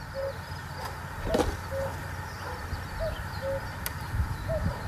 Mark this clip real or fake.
real